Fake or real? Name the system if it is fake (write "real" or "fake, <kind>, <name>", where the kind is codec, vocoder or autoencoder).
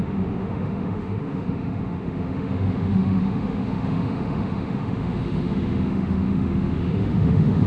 fake, autoencoder, DAC-VAE